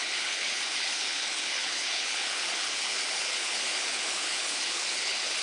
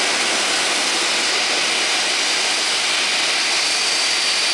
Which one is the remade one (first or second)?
first